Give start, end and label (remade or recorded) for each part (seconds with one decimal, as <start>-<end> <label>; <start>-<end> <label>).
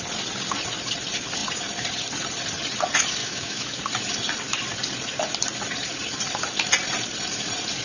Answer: 0.0-3.2 recorded; 3.2-3.8 remade; 3.8-7.8 recorded